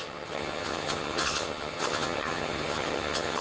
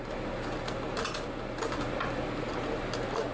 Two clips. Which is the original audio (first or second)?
second